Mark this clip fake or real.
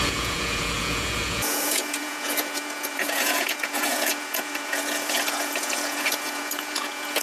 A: fake